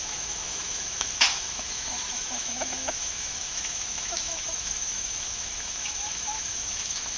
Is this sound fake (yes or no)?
yes